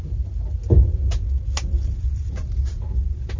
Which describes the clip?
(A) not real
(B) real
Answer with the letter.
B